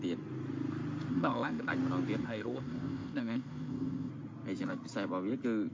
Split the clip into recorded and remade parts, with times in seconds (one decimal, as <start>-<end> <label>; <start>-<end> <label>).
0.0-1.1 recorded; 1.1-1.7 remade; 1.7-2.2 recorded; 2.2-4.1 remade; 4.1-5.7 recorded